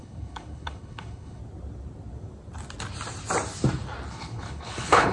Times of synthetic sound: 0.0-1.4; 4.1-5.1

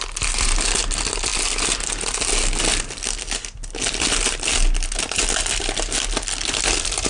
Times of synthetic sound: none

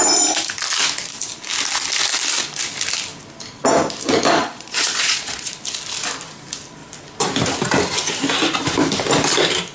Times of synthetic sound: 4.4-5.5

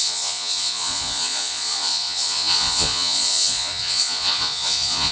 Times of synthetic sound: 0.0-5.1

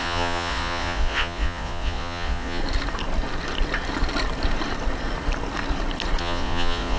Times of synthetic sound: 0.0-2.6; 6.2-7.0

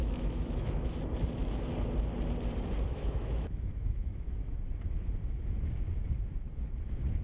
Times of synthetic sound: 0.0-0.9; 2.9-4.5

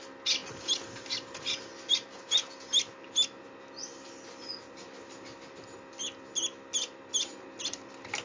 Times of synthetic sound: none